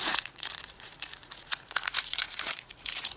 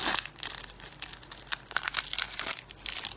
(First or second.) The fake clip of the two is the first